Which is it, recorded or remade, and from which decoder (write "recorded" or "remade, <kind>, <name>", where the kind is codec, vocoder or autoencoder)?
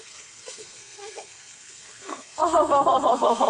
remade, codec, SNAC